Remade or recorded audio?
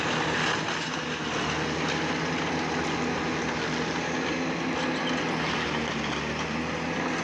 recorded